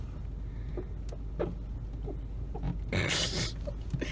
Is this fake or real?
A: real